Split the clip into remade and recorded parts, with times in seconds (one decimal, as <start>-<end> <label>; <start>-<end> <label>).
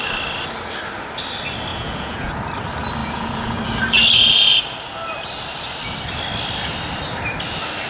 0.0-1.7 recorded; 1.7-2.3 remade; 2.3-3.0 recorded; 3.0-3.6 remade; 3.6-7.9 recorded